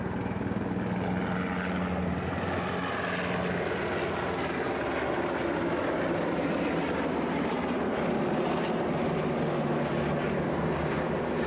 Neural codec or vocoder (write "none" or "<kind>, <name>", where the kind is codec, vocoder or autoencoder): none